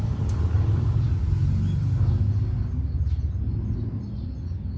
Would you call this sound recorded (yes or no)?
yes